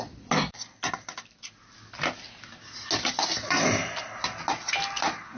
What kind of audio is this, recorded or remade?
recorded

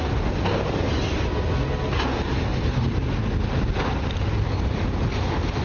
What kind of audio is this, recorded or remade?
recorded